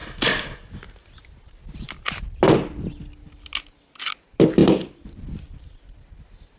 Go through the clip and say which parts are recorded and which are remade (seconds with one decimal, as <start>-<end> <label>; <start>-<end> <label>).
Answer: 0.0-6.6 recorded